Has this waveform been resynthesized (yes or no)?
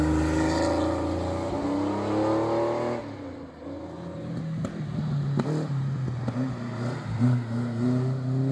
no